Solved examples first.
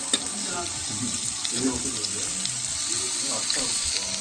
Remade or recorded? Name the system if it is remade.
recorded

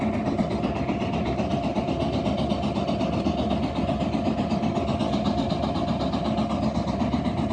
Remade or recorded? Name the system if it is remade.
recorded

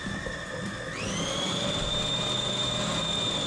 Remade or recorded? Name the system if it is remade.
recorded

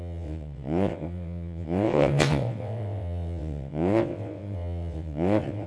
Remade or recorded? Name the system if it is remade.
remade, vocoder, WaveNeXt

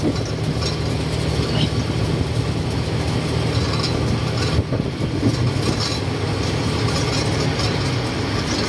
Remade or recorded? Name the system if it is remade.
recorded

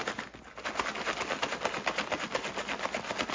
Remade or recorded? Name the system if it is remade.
recorded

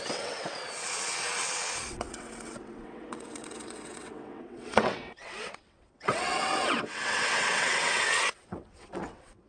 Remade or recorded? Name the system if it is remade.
remade, vocoder, WaveNeXt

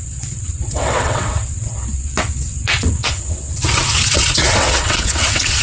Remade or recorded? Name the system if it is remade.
remade, vocoder, WaveNeXt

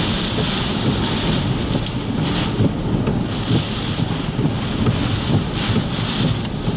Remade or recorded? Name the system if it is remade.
recorded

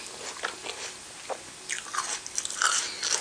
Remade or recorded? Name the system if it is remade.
recorded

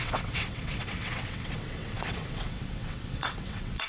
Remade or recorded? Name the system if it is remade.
remade, vocoder, WaveNeXt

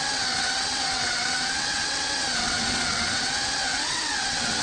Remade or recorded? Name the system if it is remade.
remade, vocoder, WaveNeXt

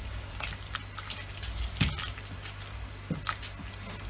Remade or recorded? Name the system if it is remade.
recorded